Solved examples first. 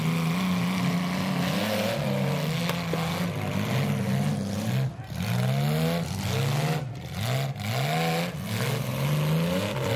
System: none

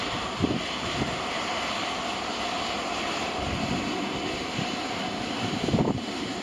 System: vocoder, BigVGAN v2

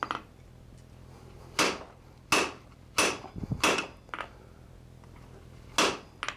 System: none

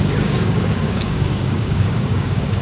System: codec, DAC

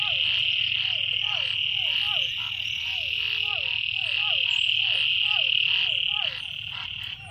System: none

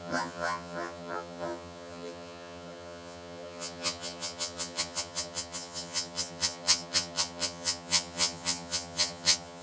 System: vocoder, HiFi-GAN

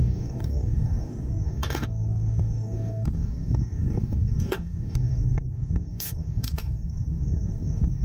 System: codec, DAC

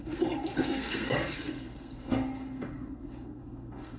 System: codec, SNAC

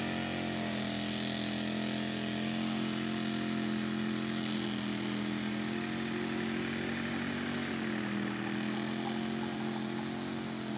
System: none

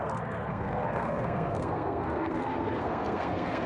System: codec, SNAC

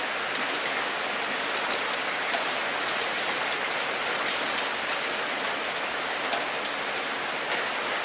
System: none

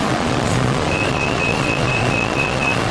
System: vocoder, Vocos